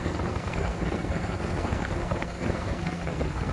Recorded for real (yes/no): no